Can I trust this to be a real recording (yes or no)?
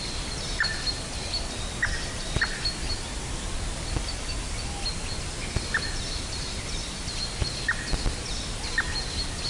yes